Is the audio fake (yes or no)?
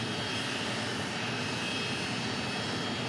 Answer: no